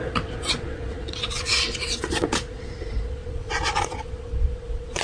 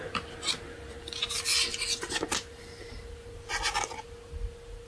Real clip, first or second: second